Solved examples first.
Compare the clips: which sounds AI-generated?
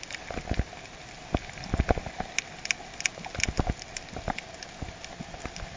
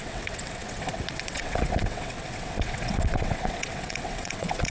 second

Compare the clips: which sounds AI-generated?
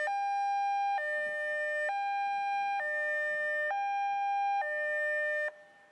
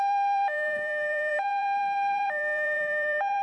second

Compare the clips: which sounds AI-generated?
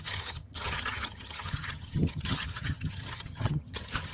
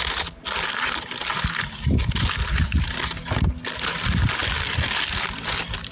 first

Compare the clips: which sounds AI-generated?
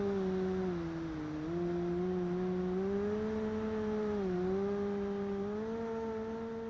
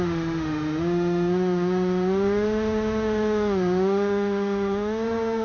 second